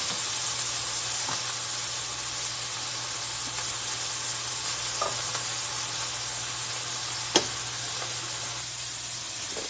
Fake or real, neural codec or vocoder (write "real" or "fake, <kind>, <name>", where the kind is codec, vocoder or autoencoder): real